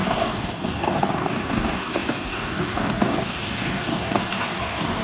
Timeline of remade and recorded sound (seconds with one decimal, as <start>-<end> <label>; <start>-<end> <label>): 0.0-5.0 remade